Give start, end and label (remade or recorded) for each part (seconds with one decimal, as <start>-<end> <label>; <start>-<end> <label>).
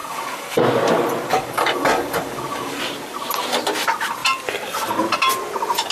0.0-0.6 remade; 0.6-1.3 recorded; 1.3-2.8 remade; 2.8-5.9 recorded